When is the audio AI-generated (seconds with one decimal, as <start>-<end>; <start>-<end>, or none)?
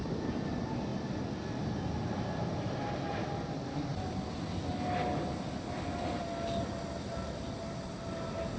none